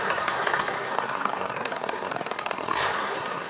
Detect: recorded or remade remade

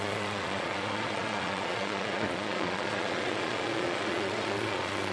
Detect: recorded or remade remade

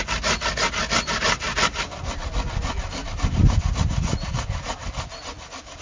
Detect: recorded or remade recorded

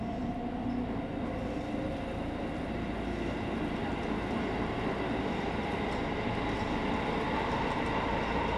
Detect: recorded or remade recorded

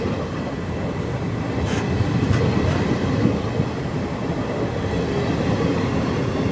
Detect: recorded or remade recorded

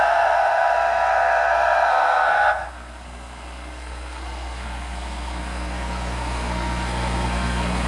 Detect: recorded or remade remade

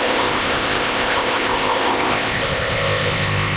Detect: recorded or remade remade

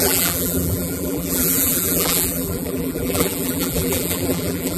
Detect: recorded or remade remade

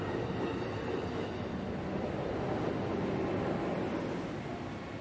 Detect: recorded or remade recorded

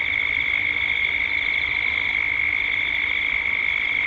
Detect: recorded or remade recorded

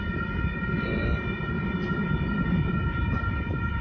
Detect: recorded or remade remade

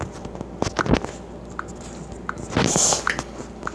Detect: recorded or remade recorded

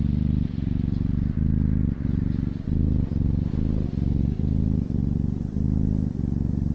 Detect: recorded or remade recorded